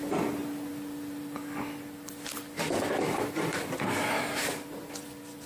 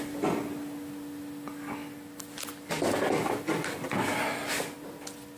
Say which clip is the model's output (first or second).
first